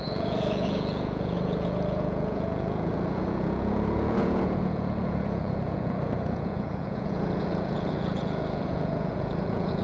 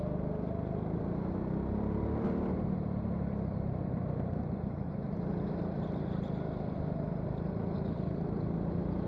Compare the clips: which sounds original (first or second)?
second